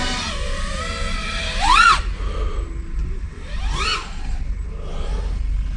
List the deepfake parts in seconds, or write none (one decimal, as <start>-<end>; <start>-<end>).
1.2-2.0; 3.0-3.6

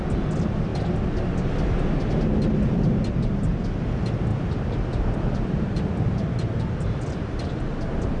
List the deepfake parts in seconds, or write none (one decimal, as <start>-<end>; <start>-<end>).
4.3-7.2

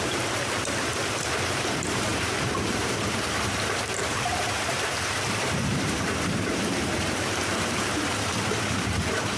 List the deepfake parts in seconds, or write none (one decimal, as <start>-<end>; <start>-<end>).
0.0-9.4

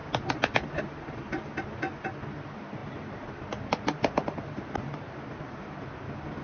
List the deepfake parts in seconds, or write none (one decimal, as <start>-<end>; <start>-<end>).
none